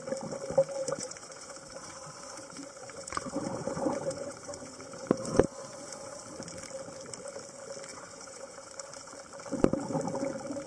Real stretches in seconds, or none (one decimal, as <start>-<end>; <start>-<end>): 0.0-0.8; 6.1-7.9; 9.1-10.7

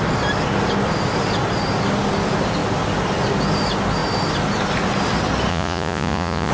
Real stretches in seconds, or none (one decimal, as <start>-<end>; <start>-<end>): 0.0-5.5

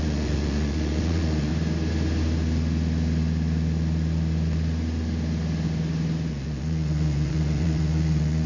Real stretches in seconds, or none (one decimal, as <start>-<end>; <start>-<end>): 1.5-6.3

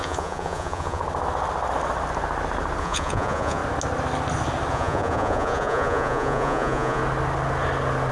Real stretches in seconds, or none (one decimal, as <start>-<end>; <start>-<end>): 1.0-2.8; 3.6-4.7; 7.0-8.1

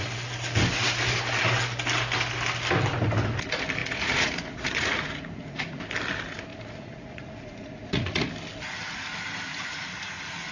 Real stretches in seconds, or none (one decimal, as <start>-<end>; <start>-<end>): 0.0-3.8; 5.8-6.5; 8.3-9.5

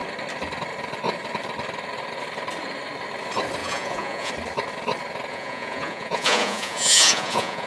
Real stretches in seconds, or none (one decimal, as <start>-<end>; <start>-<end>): 0.0-3.6; 4.3-5.3

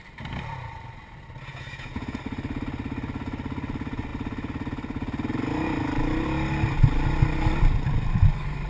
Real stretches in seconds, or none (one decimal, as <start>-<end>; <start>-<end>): 0.0-1.5; 2.2-8.7